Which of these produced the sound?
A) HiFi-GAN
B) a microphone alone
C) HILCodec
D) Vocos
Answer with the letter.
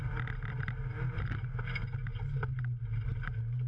B